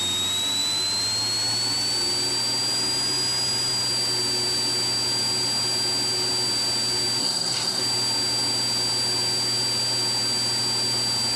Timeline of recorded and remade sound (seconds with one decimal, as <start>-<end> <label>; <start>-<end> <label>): 0.0-7.2 recorded; 7.2-7.8 remade; 7.8-11.4 recorded